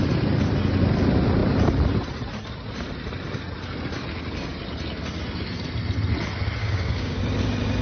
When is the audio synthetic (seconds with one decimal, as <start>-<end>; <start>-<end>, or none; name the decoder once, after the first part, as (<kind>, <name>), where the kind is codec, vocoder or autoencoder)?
6.6-7.2 (codec, DAC)